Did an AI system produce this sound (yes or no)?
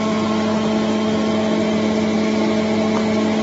no